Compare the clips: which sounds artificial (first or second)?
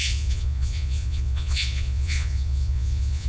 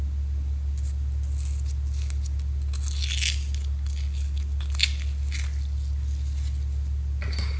first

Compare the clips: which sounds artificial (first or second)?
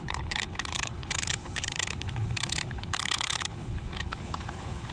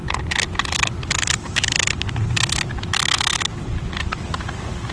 first